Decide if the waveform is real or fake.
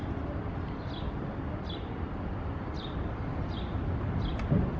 real